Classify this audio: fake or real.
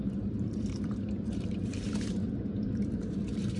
fake